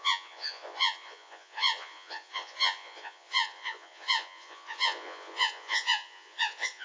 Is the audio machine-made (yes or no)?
yes